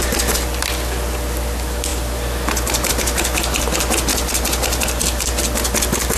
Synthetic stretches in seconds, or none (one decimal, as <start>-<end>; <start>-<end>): none